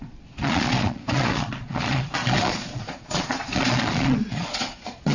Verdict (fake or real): fake